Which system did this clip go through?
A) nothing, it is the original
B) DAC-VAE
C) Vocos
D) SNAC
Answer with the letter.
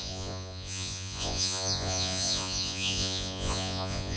C